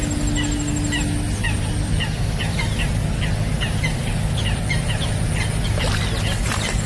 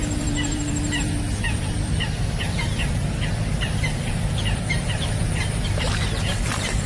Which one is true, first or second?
first